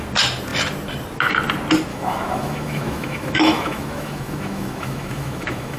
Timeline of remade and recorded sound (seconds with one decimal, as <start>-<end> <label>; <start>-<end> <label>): 0.0-1.9 recorded; 1.9-5.8 remade